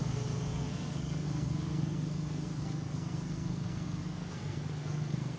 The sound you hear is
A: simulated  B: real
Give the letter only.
A